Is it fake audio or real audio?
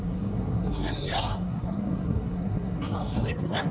fake